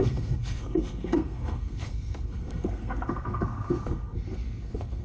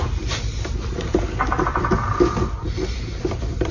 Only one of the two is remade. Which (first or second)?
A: first